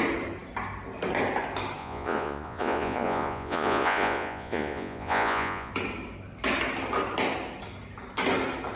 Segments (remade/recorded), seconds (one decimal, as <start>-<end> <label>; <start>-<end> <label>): 0.0-1.8 recorded; 1.8-5.7 remade; 5.7-8.8 recorded